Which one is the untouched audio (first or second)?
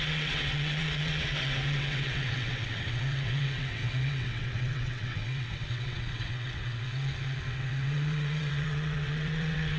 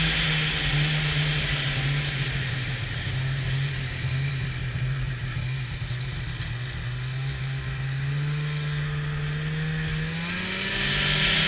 second